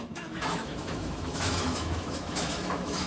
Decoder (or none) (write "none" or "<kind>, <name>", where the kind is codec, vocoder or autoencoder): autoencoder, DAC-VAE